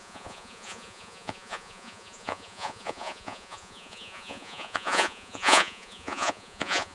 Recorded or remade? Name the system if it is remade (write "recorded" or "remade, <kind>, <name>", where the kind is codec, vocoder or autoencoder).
remade, vocoder, Vocos